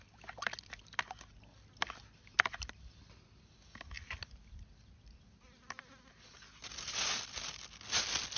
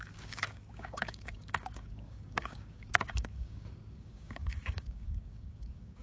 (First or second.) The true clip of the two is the first